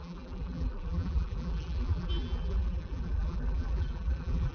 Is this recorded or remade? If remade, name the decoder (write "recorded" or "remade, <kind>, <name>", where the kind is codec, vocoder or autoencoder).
remade, vocoder, BigVGAN v2